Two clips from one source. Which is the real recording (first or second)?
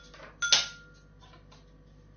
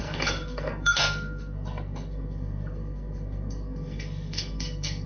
first